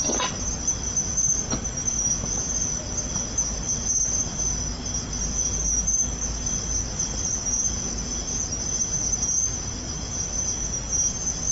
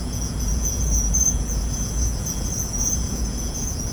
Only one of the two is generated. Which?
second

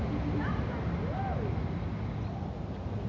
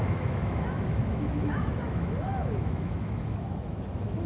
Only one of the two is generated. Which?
second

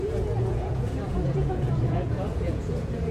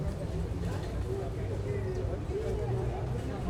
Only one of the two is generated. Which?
first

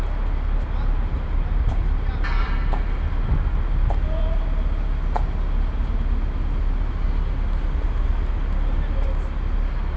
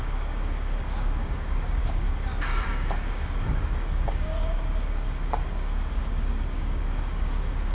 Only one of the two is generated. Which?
second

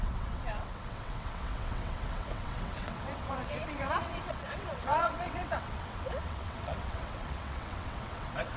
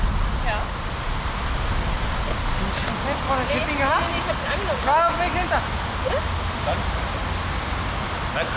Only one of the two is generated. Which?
first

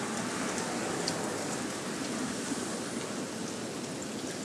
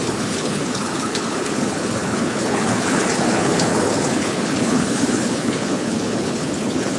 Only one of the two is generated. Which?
second